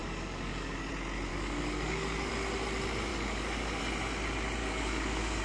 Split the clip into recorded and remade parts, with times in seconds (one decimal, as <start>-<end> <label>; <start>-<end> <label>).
0.0-0.9 remade; 0.9-1.3 recorded; 1.3-2.3 remade; 2.3-3.1 recorded; 3.1-3.8 remade; 3.8-4.6 recorded; 4.6-5.4 remade